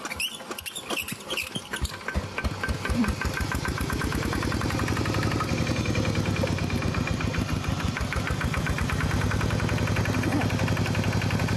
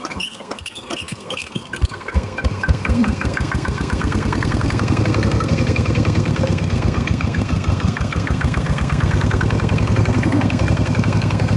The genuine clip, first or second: first